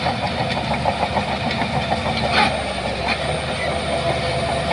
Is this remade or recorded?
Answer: recorded